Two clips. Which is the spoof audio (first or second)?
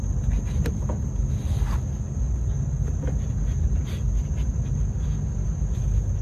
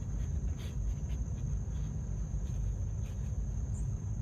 second